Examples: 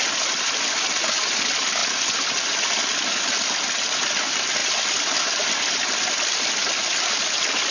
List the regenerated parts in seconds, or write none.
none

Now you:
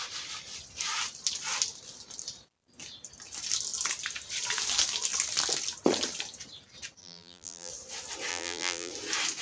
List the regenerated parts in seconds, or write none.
7.0-7.7 (vocoder, BigVGAN v2); 8.3-8.9